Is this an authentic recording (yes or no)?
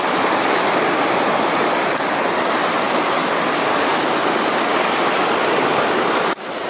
yes